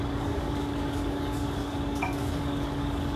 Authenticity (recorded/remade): remade